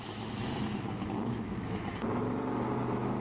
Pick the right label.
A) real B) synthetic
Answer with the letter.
B